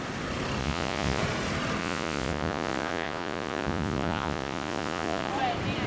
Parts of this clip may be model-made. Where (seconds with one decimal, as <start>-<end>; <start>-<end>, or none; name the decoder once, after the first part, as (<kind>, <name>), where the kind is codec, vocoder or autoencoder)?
0.6-1.2 (vocoder, Vocos); 1.8-5.3